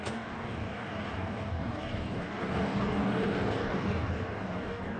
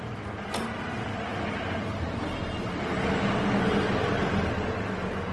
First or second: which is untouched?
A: second